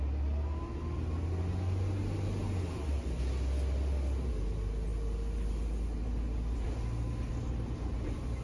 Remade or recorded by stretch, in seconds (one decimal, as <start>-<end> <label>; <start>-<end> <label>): 0.0-8.4 recorded